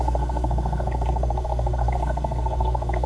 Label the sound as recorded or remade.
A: remade